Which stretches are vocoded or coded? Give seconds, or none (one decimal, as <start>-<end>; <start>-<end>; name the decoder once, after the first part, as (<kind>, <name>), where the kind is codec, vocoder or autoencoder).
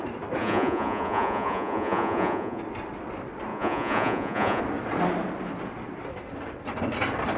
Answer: 0.4-2.6 (vocoder, Vocos); 3.5-4.6